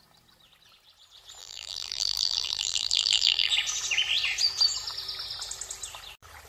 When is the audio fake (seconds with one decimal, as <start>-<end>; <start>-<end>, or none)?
1.4-3.5